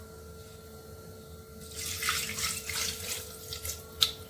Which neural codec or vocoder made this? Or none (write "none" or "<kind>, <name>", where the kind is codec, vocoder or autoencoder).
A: none